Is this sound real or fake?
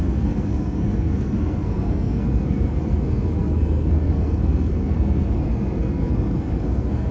fake